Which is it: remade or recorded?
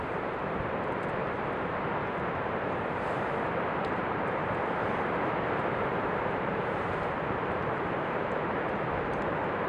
remade